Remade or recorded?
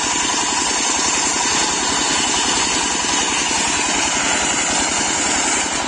recorded